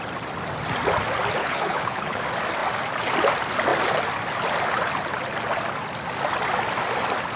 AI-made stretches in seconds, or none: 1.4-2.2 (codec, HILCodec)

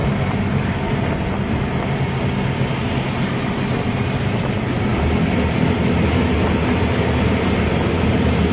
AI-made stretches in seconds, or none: none

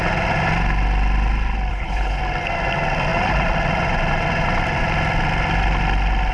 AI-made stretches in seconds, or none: 1.7-2.2 (codec, HILCodec)

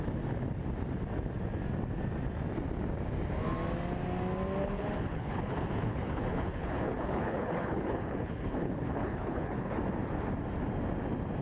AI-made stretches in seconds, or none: 4.6-9.8 (codec, HILCodec)

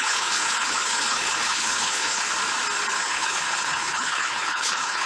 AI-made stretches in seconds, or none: 0.0-2.3 (codec, HILCodec); 2.9-5.1